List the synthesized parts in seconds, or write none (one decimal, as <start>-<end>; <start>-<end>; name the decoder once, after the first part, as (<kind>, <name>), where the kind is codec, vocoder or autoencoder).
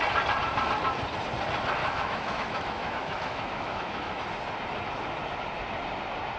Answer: 1.8-4.2 (autoencoder, DAC-VAE)